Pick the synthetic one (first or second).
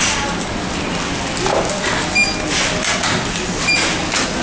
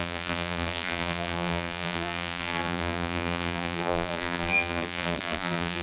second